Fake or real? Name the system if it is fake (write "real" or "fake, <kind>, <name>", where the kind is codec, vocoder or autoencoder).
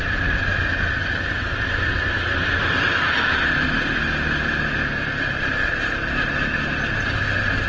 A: real